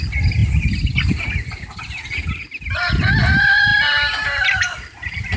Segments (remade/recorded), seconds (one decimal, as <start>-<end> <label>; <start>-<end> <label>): 0.0-5.4 recorded